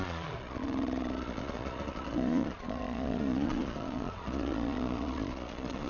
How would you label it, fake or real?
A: fake